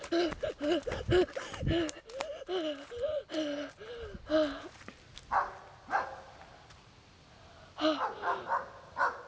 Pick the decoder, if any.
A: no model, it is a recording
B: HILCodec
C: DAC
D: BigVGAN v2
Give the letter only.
A